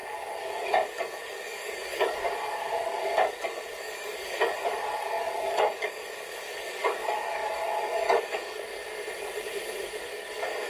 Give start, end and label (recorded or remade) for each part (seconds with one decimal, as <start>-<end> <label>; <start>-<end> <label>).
0.0-8.7 remade; 8.7-10.0 recorded; 10.0-10.7 remade